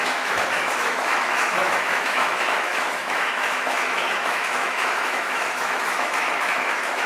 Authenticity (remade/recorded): remade